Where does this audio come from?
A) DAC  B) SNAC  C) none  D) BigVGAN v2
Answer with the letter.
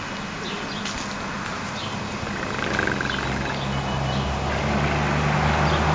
C